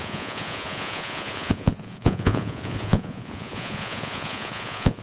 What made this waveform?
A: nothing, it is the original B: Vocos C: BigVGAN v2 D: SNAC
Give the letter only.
B